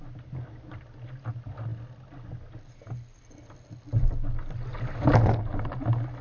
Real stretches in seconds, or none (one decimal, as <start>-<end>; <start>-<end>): 0.0-6.2